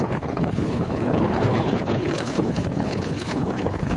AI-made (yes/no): yes